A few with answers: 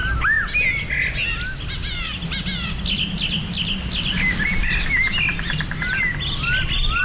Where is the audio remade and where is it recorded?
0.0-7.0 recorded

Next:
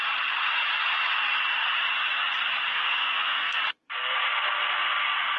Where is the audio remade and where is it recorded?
0.0-2.7 recorded; 2.7-3.6 remade; 3.6-5.4 recorded

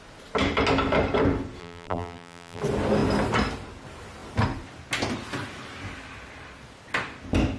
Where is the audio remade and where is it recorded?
0.0-1.6 recorded; 1.6-2.6 remade; 2.6-7.6 recorded

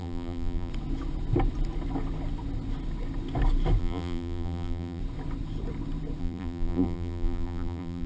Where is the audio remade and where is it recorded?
0.0-0.7 remade; 0.7-3.8 recorded; 3.8-5.0 remade; 5.0-6.2 recorded; 6.2-8.1 remade

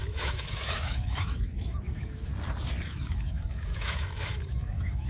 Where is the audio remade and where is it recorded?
0.0-2.3 remade; 2.3-2.9 recorded; 2.9-5.1 remade

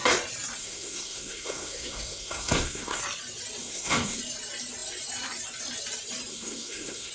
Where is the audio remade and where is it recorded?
0.0-0.6 recorded; 0.6-3.0 remade; 3.0-3.6 recorded; 3.6-4.2 remade; 4.2-6.3 recorded; 6.3-7.1 remade

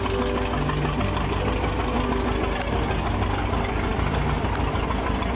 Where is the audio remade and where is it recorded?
0.0-5.3 recorded